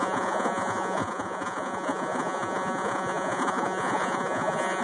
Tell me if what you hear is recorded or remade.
remade